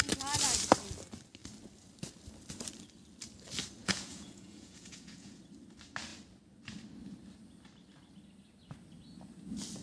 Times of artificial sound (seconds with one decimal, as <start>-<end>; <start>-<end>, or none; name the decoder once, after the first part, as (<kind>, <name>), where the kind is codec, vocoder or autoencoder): 3.8-5.4 (vocoder, Vocos)

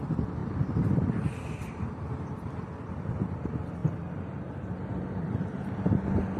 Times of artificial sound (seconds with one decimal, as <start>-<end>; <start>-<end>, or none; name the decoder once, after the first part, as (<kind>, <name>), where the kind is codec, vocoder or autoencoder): 0.4-2.5 (vocoder, BigVGAN v2)

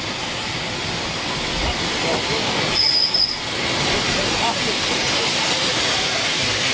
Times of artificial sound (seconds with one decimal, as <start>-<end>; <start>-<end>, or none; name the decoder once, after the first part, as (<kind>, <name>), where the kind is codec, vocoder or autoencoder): none